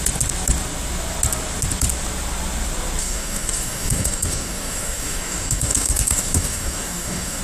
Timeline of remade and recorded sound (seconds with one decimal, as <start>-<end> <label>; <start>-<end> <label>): 0.0-3.0 recorded; 3.0-7.4 remade